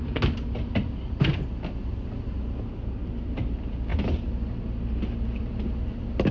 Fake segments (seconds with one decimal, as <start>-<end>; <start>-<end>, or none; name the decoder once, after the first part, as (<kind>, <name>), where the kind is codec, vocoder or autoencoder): none